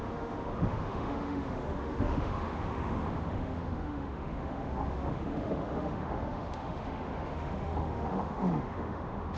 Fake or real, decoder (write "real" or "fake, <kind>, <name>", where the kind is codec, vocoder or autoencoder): fake, autoencoder, DAC-VAE